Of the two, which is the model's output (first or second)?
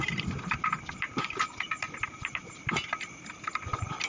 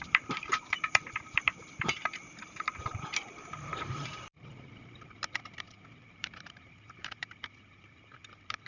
second